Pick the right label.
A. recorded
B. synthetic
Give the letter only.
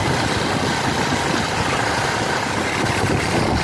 A